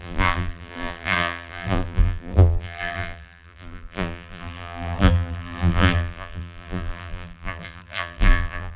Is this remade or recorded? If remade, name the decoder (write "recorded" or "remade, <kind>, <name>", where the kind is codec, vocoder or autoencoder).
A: remade, vocoder, BigVGAN v2